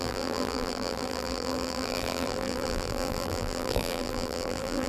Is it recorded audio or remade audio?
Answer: remade